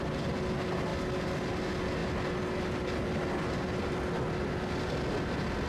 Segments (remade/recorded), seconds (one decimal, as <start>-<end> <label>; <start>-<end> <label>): 0.0-5.7 recorded